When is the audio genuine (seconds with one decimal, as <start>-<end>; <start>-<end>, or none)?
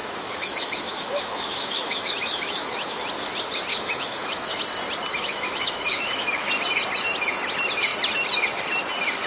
3.0-3.7; 4.6-5.1; 6.5-9.3